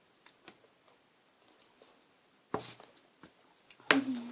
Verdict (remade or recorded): recorded